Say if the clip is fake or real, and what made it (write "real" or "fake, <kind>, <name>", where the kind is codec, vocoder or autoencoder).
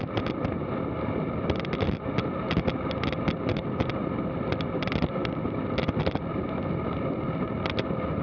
real